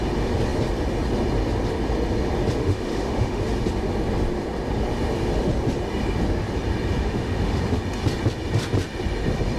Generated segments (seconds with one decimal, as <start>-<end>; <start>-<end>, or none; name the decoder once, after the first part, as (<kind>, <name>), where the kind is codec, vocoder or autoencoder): 2.6-3.4 (autoencoder, DAC-VAE); 7.0-7.6